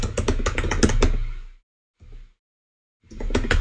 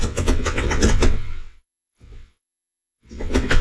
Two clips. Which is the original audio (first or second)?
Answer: first